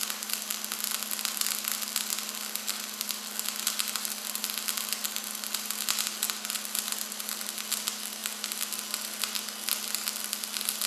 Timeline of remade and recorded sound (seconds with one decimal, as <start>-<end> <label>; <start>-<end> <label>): 0.0-10.9 recorded